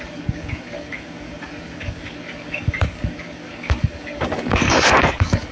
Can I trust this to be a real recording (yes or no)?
no